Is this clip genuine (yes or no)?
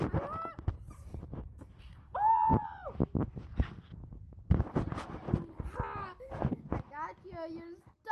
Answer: yes